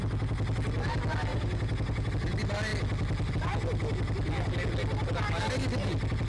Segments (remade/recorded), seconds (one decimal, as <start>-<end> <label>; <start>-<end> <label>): 0.0-1.3 recorded; 1.3-2.1 remade; 2.1-6.3 recorded

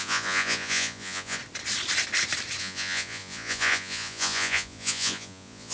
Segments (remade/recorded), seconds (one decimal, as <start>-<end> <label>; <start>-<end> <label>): 0.0-1.4 remade; 1.4-2.6 recorded; 2.6-5.7 remade

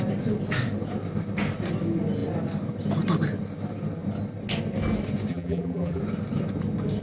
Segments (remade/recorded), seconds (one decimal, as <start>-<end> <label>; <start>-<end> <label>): 0.0-5.3 recorded; 5.3-6.0 remade; 6.0-7.0 recorded

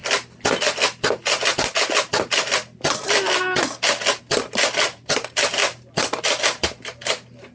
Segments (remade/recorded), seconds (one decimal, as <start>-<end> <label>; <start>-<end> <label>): 0.0-7.5 recorded

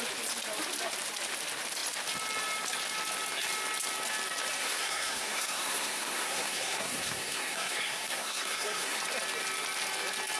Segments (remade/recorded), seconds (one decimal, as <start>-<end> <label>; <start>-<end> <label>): 0.0-4.6 recorded; 4.6-9.0 remade; 9.0-10.4 recorded

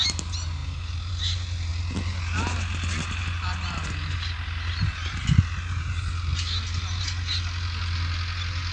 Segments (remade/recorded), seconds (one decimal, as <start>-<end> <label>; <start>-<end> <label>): 0.0-8.7 recorded

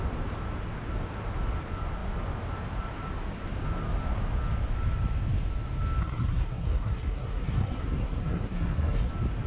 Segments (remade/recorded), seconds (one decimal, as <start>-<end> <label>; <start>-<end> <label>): 0.0-6.0 recorded; 6.0-9.1 remade; 9.1-9.5 recorded

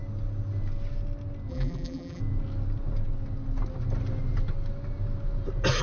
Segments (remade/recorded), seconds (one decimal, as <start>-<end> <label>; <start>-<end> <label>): 0.0-1.5 recorded; 1.5-2.2 remade; 2.2-5.8 recorded